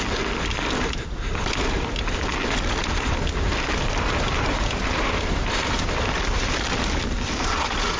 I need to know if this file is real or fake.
real